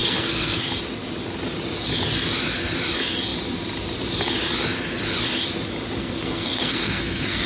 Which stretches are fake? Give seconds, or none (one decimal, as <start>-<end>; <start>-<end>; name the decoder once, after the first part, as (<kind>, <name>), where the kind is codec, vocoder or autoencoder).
0.0-0.6 (codec, SNAC); 6.0-7.5